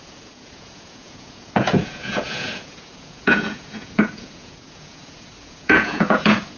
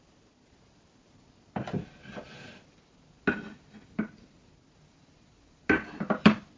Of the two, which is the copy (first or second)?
first